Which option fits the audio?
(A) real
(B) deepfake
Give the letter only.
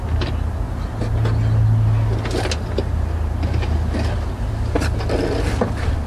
A